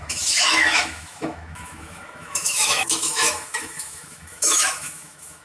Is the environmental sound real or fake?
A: fake